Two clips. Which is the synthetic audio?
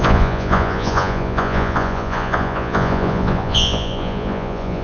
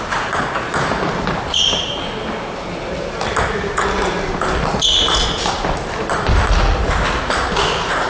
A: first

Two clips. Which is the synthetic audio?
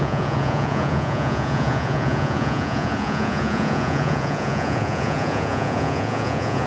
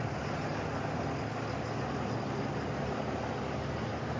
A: first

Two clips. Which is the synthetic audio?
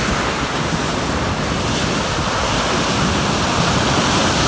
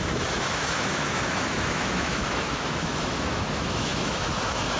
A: second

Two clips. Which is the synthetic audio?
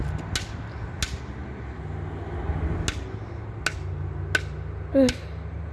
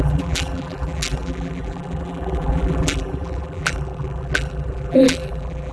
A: second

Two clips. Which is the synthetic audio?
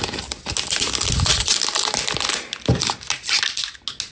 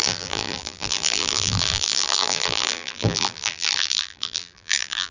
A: second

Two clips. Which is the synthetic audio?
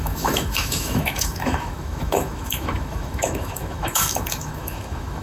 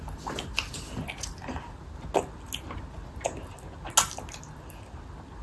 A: first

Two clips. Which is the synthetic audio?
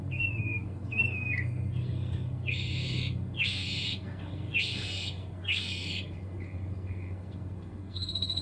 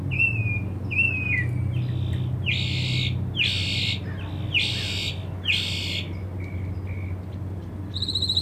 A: first